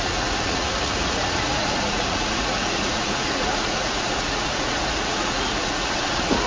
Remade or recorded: remade